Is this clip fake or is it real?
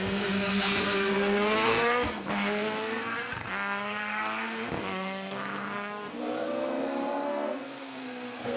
fake